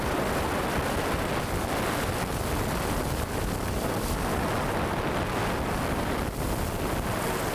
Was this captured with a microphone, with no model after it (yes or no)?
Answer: yes